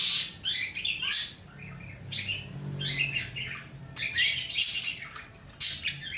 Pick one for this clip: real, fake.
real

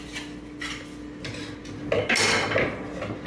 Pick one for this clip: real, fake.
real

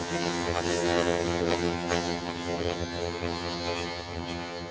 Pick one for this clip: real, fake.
fake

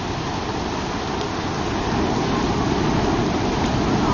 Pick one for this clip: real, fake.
real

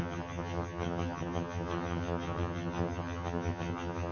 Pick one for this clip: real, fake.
fake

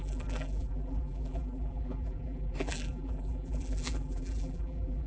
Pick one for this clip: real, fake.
fake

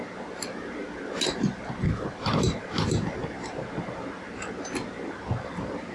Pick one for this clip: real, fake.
real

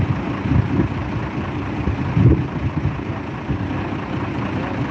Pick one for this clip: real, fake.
real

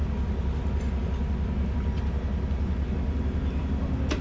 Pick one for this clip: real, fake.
real